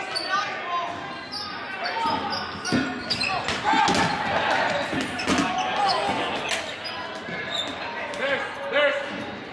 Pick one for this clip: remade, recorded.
recorded